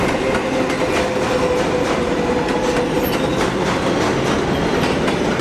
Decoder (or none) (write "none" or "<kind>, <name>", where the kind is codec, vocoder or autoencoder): none